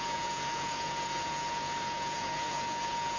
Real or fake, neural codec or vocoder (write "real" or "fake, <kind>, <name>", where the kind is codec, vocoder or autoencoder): fake, vocoder, Vocos